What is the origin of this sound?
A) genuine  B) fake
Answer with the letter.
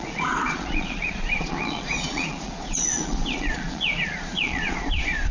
B